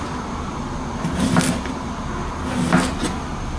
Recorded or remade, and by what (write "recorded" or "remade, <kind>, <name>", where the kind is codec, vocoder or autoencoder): recorded